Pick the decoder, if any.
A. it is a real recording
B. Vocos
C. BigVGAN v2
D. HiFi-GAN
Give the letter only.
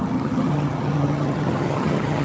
D